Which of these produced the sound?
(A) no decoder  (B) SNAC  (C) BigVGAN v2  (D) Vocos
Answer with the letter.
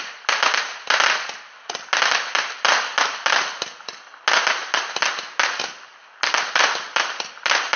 A